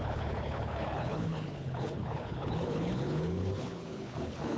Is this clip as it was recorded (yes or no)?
no